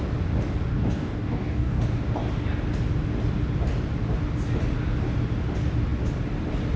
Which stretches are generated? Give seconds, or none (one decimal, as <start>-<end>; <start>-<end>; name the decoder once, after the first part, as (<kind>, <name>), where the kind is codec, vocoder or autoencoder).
0.7-1.8 (codec, DAC)